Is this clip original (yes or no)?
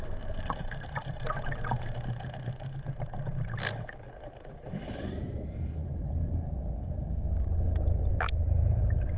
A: yes